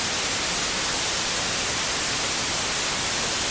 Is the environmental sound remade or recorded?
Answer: recorded